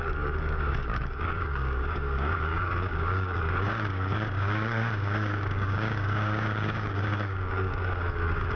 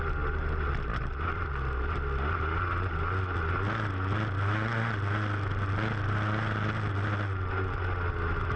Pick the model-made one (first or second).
first